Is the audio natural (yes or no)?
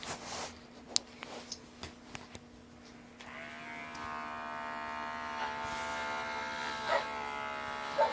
yes